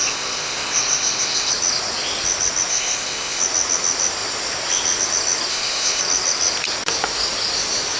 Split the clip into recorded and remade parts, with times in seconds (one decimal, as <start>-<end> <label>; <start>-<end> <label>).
0.0-1.5 remade; 1.5-2.7 recorded; 2.7-3.4 remade; 3.4-5.5 recorded; 5.5-6.0 remade; 6.0-8.0 recorded